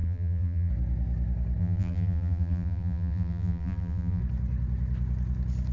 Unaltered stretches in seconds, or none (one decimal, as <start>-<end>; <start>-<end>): 0.7-1.6; 4.2-5.7